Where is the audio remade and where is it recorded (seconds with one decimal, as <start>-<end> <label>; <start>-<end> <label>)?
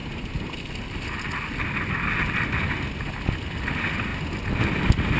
0.0-5.2 recorded